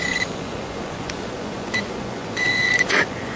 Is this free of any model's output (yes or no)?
no